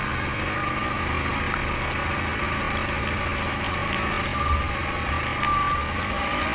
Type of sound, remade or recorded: recorded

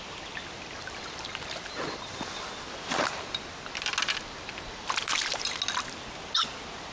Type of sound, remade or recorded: recorded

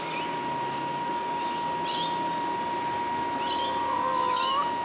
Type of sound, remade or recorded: recorded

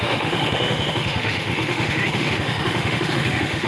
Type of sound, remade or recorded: remade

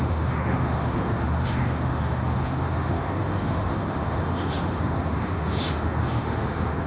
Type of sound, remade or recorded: remade